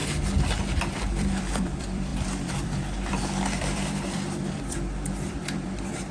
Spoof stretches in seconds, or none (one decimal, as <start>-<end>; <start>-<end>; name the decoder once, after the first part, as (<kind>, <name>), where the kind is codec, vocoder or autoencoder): 0.6-6.1 (vocoder, BigVGAN v2)